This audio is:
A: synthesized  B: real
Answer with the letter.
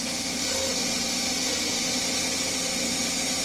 B